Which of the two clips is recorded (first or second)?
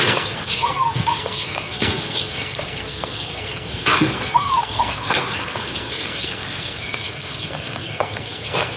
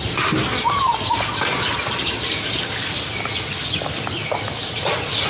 second